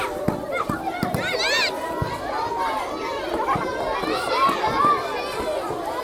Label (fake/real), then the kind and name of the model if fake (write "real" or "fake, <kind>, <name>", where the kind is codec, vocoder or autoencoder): real